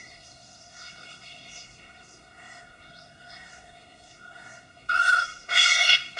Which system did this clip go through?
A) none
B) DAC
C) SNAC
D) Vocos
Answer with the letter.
C